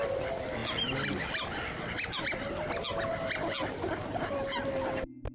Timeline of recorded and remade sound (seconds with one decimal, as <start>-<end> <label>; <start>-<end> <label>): 0.0-5.3 recorded